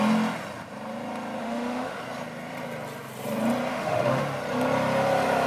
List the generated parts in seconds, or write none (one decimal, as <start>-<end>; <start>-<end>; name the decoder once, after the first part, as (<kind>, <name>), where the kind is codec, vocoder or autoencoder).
1.4-2.0 (autoencoder, DAC-VAE); 3.7-4.2